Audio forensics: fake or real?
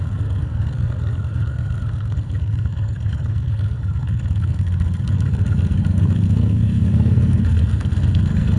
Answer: fake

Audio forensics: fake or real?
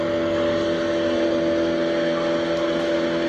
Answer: real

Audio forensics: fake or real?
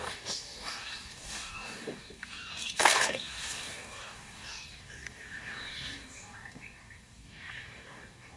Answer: fake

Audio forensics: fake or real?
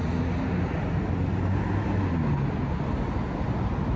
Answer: real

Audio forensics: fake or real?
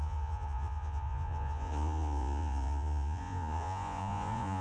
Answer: fake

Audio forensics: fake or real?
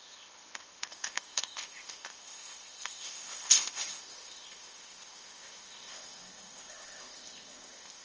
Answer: fake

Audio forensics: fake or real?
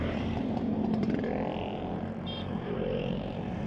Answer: fake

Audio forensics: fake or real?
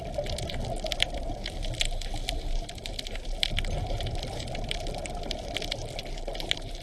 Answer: real